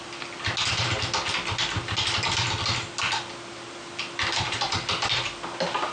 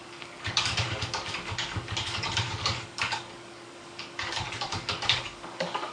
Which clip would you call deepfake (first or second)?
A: second